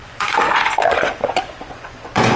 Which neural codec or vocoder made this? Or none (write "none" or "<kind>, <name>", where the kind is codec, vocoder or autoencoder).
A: vocoder, Vocos